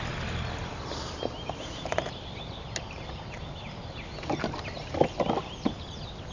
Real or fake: real